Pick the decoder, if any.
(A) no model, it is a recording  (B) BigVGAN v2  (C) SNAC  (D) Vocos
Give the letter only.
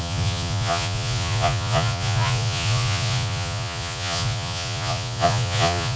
D